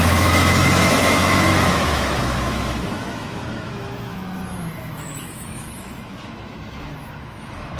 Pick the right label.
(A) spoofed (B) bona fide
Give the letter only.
A